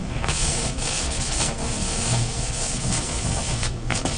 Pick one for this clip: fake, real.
fake